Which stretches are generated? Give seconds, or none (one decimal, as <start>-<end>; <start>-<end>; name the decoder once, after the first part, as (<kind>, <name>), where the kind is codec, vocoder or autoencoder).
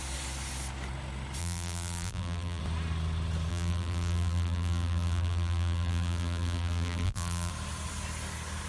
1.4-2.6 (vocoder, BigVGAN v2); 3.5-7.5